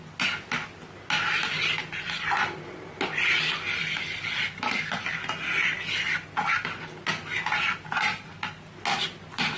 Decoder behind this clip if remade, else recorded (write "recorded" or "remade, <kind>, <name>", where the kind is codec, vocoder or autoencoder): recorded